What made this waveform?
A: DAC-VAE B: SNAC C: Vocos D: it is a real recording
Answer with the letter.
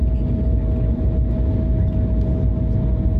D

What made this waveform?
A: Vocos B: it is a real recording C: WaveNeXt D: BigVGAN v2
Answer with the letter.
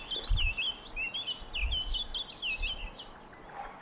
B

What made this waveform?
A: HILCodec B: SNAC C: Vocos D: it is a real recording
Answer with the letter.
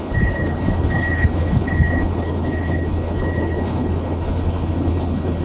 A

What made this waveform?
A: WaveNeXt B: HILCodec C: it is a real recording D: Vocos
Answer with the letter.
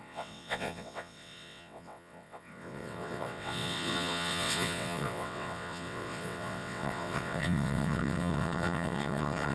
A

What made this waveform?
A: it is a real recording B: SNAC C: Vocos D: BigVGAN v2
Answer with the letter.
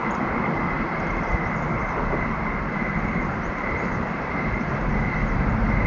D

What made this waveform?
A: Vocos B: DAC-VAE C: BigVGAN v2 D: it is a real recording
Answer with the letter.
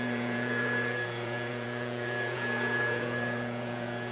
A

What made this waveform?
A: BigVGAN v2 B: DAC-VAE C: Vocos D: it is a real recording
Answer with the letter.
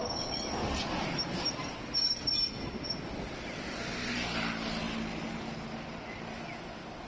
D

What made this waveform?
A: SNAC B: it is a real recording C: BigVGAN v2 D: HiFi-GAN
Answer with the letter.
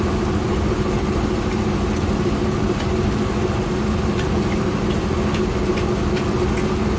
B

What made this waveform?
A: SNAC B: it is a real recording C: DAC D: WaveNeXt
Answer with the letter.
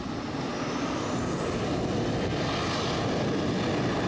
B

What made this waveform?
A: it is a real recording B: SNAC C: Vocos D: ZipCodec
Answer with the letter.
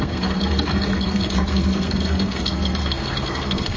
B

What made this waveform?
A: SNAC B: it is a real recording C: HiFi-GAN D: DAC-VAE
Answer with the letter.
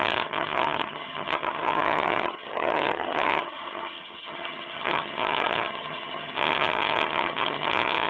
C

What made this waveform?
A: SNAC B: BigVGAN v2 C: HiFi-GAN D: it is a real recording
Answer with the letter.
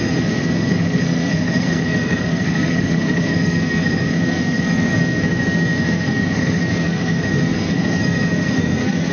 A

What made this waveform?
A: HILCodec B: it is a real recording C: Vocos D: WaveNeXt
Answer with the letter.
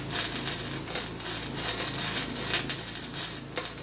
B